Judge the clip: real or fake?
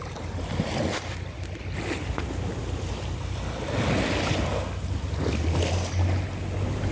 real